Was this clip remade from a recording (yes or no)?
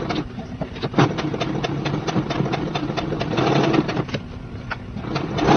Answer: no